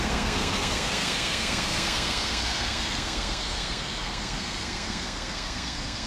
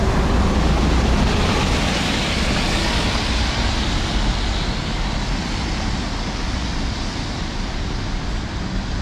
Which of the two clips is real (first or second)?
second